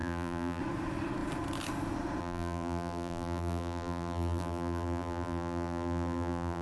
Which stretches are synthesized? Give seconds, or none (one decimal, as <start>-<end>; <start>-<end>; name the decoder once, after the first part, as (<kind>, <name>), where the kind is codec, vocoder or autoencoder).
0.0-0.6 (vocoder, BigVGAN v2); 2.2-6.6